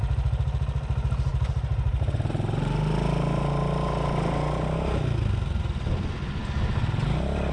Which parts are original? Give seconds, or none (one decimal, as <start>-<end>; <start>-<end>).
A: 0.0-1.3; 2.3-7.5